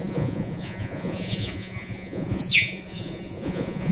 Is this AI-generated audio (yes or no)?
yes